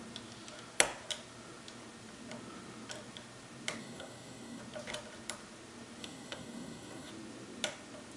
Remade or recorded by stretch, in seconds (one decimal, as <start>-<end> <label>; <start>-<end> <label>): 0.0-3.8 recorded; 3.8-4.6 remade; 4.6-6.0 recorded; 6.0-7.1 remade; 7.1-8.2 recorded